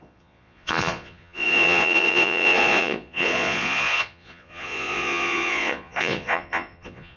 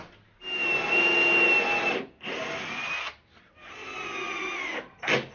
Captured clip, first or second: second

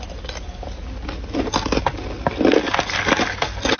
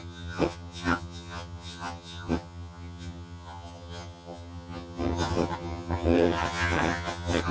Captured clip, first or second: first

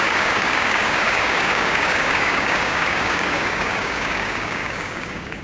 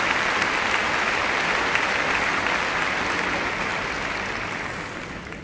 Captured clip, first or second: second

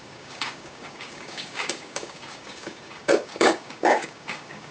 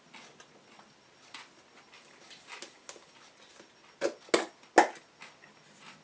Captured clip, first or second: second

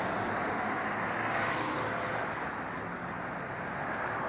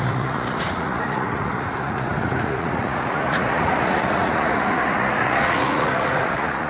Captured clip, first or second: first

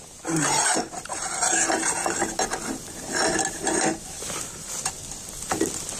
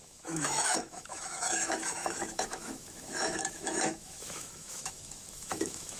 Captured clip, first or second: first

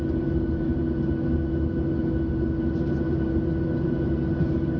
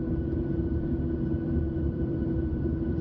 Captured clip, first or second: first